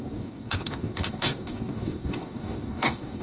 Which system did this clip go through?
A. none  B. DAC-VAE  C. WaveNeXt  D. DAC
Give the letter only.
D